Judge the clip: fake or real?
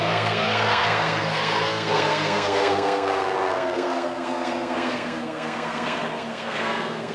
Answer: fake